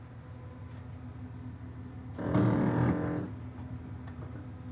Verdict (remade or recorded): recorded